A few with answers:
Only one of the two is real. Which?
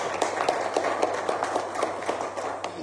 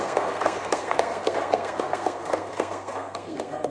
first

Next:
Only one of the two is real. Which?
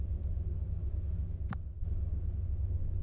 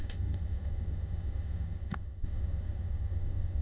first